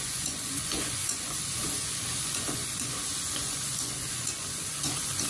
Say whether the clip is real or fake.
fake